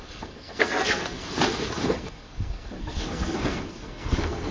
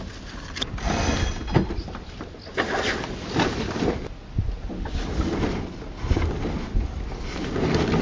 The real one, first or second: second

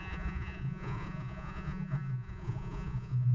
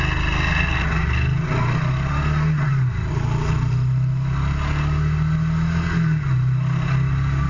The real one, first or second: second